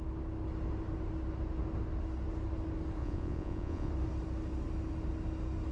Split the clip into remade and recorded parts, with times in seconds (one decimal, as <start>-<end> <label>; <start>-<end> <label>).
0.0-3.0 recorded; 3.0-3.9 remade; 3.9-5.7 recorded